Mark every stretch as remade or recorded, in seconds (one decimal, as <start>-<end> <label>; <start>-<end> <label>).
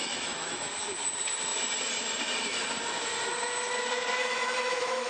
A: 0.0-0.7 remade; 0.7-4.2 recorded; 4.2-5.1 remade